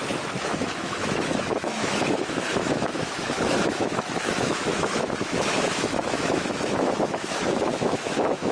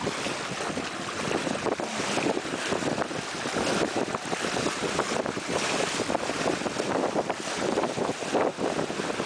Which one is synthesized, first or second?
first